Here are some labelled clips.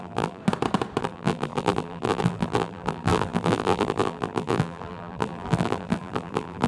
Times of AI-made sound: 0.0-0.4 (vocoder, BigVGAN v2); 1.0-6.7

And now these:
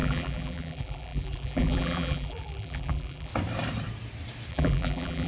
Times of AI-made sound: 0.0-3.3 (vocoder, BigVGAN v2); 4.5-5.3

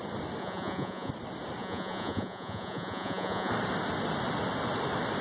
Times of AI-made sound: 0.4-1.1 (vocoder, Vocos); 1.6-3.5

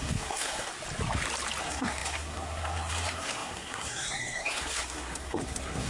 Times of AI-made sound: 0.0-0.7 (codec, SNAC); 1.6-5.9